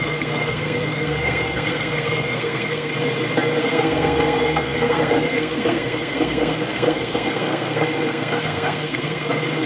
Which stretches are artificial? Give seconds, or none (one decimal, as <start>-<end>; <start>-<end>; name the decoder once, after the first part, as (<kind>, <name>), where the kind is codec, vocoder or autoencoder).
0.0-2.9 (codec, SNAC); 3.6-9.7